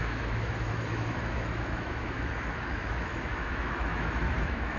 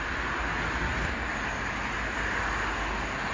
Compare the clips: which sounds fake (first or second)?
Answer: first